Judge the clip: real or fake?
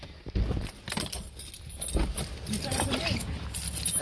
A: real